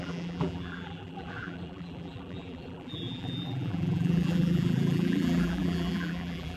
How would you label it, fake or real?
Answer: fake